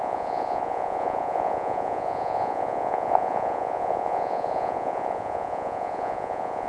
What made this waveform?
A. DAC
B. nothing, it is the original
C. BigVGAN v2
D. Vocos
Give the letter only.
D